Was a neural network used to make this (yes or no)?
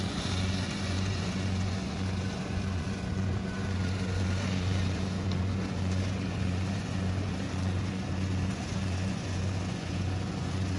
yes